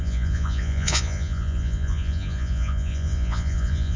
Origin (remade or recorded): remade